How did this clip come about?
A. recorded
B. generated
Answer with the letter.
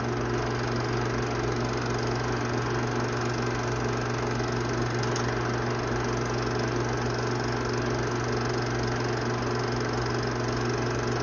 A